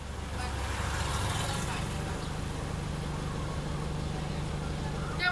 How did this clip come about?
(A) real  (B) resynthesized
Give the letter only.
A